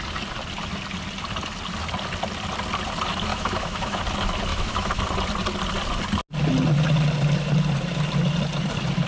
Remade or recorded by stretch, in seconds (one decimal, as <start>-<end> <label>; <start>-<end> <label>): 0.0-3.3 recorded; 3.3-4.0 remade; 4.0-4.5 recorded; 4.5-5.0 remade; 5.0-9.1 recorded

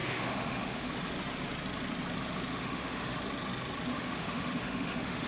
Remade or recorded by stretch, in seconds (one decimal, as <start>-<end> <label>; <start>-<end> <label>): 0.0-0.9 remade; 0.9-2.5 recorded; 2.5-3.2 remade; 3.2-3.9 recorded; 3.9-5.3 remade

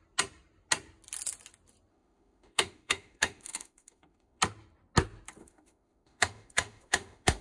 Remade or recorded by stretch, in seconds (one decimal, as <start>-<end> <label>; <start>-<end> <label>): 0.0-1.9 recorded; 1.9-4.4 remade; 4.4-5.4 recorded; 5.4-7.4 remade

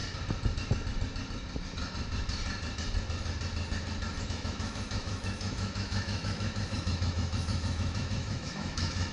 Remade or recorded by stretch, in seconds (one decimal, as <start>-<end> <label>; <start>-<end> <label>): 0.0-4.2 recorded; 4.2-9.1 remade

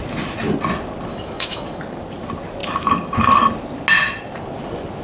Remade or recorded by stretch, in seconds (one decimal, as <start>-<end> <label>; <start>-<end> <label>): 0.0-1.1 recorded; 1.1-1.8 remade; 1.8-5.0 recorded

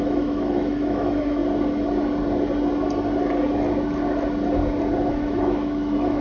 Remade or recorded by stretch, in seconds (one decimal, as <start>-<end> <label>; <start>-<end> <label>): 0.0-1.4 remade; 1.4-5.1 recorded; 5.1-6.2 remade

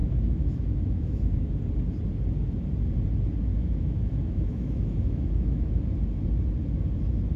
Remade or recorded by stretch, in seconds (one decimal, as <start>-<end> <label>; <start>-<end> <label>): 0.0-1.5 remade; 1.5-3.5 recorded; 3.5-5.8 remade; 5.8-7.4 recorded